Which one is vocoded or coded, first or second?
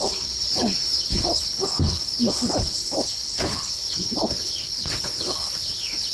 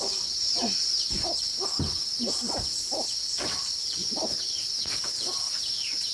first